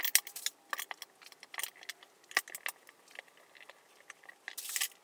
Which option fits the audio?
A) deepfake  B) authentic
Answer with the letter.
B